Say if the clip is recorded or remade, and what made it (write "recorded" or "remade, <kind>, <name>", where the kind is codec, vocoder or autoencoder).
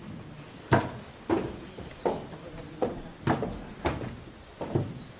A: recorded